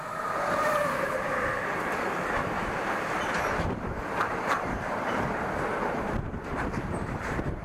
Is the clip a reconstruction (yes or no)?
yes